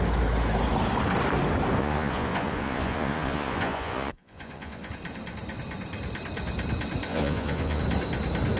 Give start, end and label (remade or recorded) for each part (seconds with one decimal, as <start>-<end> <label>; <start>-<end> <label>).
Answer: 0.0-1.8 recorded; 1.8-4.9 remade; 4.9-7.1 recorded; 7.1-7.8 remade; 7.8-8.6 recorded